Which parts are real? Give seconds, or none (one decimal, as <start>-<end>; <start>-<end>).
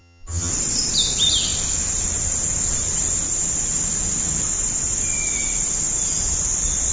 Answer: 0.5-6.9